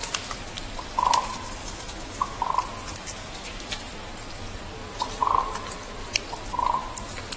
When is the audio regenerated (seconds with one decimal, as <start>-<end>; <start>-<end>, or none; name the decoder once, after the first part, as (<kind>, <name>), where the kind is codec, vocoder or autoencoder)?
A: 1.6-2.5 (autoencoder, DAC-VAE); 3.2-3.7